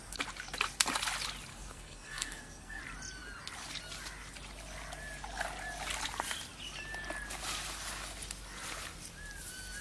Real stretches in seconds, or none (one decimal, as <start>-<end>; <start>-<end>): 0.0-1.5; 2.8-9.8